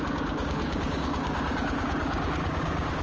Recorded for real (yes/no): no